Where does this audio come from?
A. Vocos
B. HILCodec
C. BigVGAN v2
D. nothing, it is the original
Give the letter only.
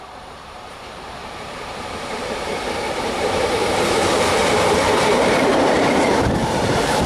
C